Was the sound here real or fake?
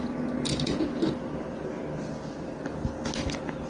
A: real